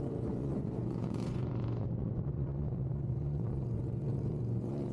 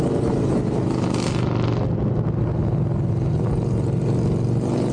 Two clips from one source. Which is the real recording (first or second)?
second